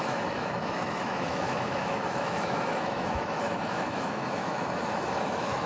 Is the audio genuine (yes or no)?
no